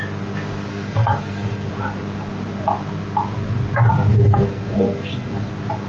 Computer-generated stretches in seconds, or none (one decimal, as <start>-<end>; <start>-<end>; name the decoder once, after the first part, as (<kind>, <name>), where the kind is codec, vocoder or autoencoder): 0.7-1.7 (codec, SNAC); 4.1-5.5